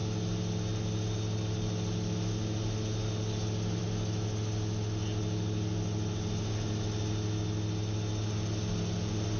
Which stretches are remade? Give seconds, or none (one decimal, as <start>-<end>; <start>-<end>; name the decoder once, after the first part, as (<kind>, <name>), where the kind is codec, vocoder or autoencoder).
none